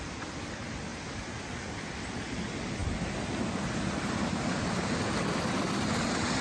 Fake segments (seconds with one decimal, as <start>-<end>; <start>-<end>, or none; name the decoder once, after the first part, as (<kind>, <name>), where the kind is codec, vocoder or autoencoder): none